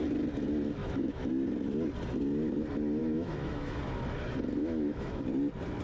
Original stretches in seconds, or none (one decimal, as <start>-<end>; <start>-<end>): 0.0-0.8; 1.3-3.0; 3.8-4.6; 5.2-5.8